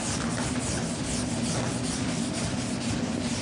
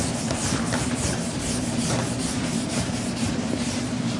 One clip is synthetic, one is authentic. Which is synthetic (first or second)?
second